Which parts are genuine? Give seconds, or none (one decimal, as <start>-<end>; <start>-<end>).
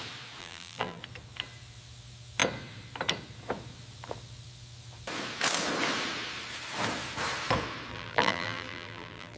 0.0-0.4; 1.0-7.9